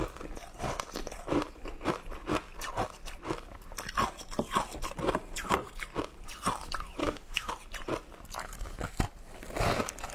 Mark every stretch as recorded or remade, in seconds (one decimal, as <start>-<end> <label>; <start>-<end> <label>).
0.0-7.0 recorded; 7.0-7.5 remade; 7.5-10.1 recorded